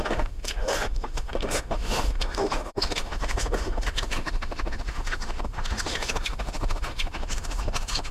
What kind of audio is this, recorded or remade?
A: remade